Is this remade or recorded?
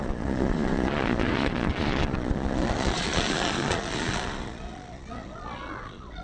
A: remade